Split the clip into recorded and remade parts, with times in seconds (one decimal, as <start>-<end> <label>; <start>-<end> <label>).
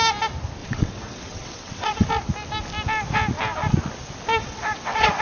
0.0-0.6 recorded; 0.6-2.1 remade; 2.1-4.4 recorded; 4.4-5.2 remade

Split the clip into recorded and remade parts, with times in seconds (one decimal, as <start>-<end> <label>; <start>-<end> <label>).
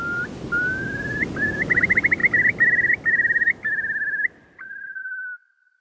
0.0-5.8 recorded